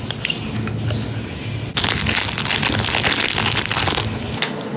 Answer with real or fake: real